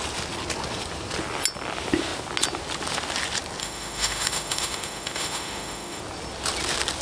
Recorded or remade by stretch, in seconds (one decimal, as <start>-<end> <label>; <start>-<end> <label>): 0.0-3.6 recorded; 3.6-6.0 remade; 6.0-7.0 recorded